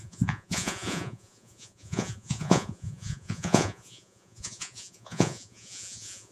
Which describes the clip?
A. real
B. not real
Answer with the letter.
B